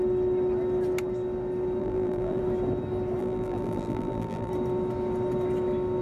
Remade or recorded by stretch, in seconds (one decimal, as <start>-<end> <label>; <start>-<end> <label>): 0.0-1.8 recorded; 1.8-2.4 remade; 2.4-3.2 recorded; 3.2-4.5 remade; 4.5-6.0 recorded